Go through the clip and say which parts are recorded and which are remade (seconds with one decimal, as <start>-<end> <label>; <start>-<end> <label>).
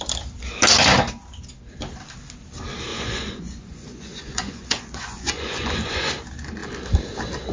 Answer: 0.0-2.9 recorded; 2.9-6.1 remade; 6.1-7.5 recorded